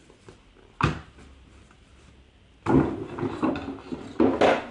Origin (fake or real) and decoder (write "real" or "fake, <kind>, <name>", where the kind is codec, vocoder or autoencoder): real